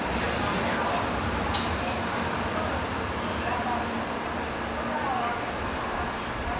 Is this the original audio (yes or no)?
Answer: yes